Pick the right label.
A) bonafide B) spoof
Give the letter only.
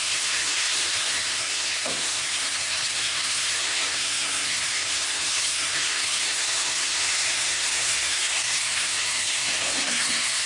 B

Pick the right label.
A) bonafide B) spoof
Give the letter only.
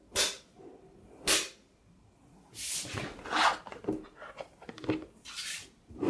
A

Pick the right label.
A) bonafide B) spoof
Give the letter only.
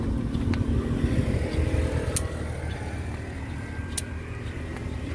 A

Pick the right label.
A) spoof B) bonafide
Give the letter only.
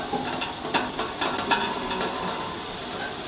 B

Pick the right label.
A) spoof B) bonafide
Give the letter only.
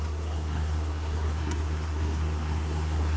A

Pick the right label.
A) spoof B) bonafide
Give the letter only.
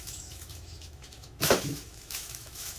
A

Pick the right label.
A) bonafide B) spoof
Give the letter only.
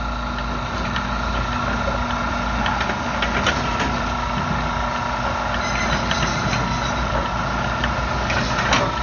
A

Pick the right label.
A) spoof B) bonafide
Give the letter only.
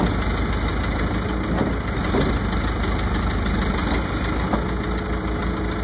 B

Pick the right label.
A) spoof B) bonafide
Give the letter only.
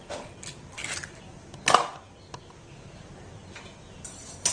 B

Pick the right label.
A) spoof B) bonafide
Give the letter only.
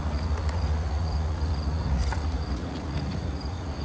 A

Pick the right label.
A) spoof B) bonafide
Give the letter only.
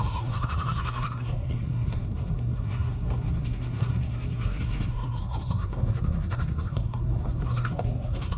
A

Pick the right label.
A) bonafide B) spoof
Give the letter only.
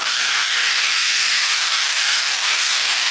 B